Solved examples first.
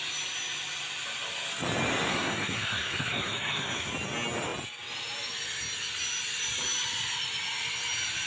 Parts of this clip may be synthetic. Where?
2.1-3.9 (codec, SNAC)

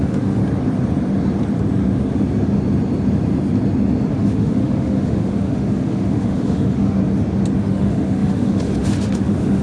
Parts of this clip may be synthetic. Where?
0.0-0.4 (autoencoder, DAC-VAE); 4.1-7.0; 7.6-9.6

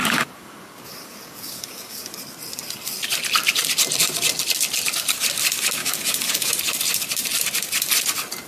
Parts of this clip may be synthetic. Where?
0.0-2.1 (codec, DAC); 5.8-6.5